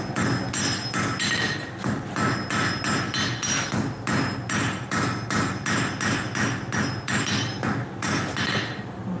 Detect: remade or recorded recorded